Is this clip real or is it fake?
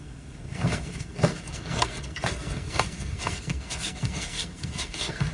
fake